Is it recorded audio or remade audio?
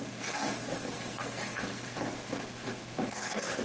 remade